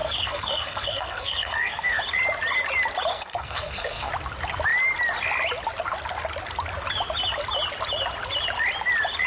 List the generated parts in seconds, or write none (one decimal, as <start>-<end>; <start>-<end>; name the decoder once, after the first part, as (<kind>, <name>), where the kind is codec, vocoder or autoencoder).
0.0-2.0 (codec, SNAC); 3.1-4.1